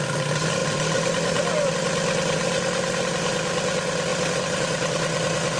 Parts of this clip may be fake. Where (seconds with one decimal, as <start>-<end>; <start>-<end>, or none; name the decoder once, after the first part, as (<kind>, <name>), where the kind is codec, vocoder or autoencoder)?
none